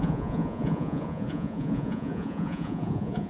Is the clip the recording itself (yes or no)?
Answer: no